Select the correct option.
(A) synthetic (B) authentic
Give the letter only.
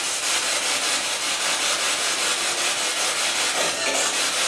B